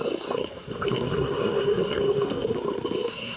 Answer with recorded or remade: remade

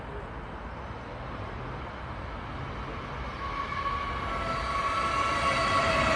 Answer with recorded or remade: recorded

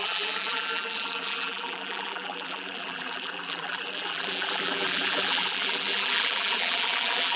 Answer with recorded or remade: remade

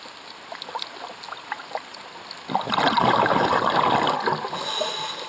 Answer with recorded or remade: recorded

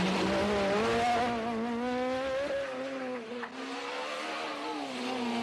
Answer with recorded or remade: recorded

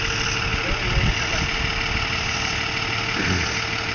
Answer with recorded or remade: recorded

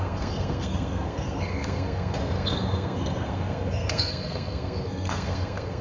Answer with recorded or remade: remade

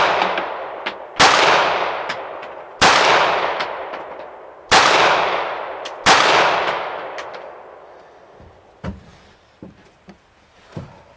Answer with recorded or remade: recorded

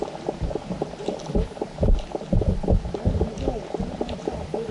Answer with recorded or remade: recorded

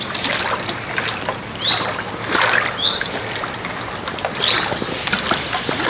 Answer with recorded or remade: recorded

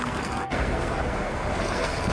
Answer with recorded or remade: remade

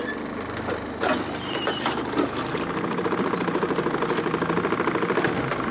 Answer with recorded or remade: recorded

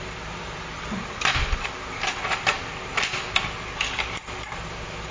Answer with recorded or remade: recorded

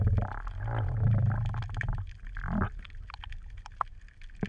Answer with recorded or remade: recorded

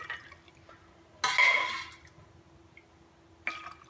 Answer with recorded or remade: recorded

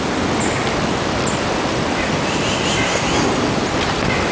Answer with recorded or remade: recorded